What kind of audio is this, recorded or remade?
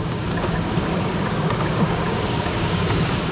remade